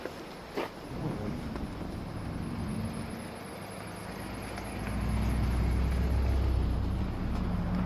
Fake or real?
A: real